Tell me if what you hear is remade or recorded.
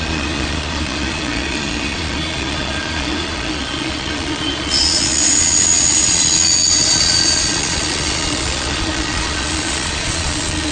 remade